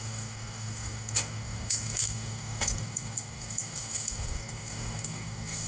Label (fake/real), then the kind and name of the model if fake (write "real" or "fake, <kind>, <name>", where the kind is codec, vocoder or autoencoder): fake, codec, DAC